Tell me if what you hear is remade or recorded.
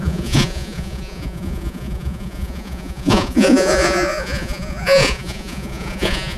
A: remade